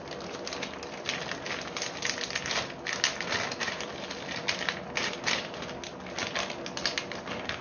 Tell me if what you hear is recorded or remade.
recorded